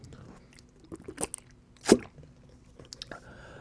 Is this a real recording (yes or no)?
yes